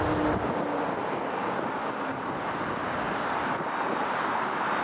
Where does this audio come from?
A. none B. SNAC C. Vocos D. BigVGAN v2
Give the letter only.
A